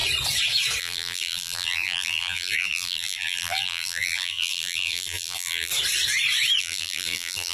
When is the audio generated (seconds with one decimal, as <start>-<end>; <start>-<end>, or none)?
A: 0.8-5.7; 6.6-7.5